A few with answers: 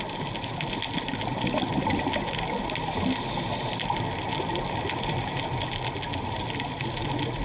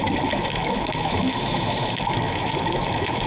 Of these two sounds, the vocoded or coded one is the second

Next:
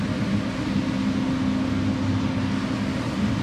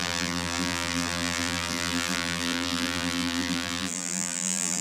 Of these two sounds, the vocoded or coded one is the second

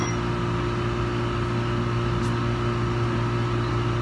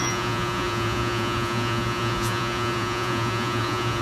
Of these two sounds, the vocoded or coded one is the second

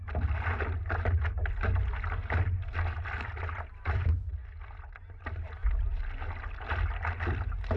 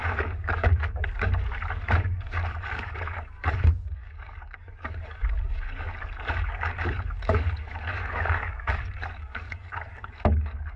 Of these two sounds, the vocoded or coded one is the second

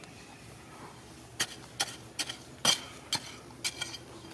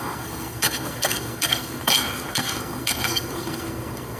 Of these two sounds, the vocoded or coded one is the second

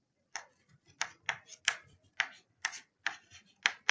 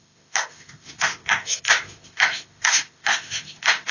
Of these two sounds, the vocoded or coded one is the second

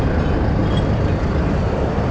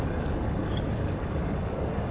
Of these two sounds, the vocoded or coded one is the second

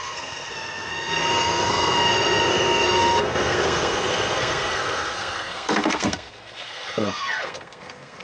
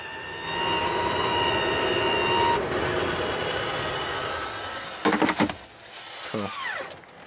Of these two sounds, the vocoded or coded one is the first